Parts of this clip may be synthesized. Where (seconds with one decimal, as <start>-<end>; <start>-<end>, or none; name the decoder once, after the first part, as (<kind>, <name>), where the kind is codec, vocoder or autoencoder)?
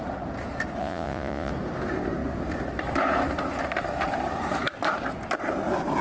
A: 0.8-1.5 (vocoder, Vocos)